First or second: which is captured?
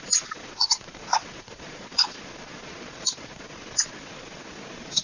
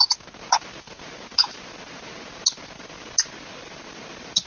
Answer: second